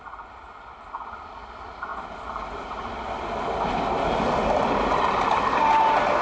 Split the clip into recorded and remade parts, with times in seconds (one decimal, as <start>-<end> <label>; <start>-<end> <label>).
0.0-6.2 recorded